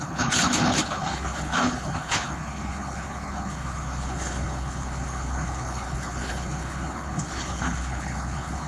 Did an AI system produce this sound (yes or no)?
yes